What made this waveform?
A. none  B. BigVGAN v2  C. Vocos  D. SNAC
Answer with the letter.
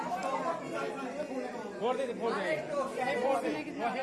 A